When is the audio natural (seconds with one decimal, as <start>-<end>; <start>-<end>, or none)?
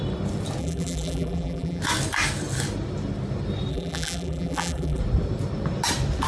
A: 0.0-0.6; 1.8-3.7; 5.0-6.3